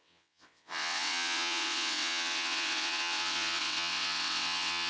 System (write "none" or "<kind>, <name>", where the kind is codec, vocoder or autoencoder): vocoder, WaveNeXt